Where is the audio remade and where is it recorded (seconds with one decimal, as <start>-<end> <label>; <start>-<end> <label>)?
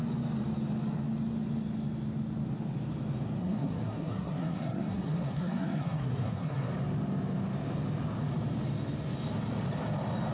0.0-3.4 recorded; 3.4-6.7 remade; 6.7-10.3 recorded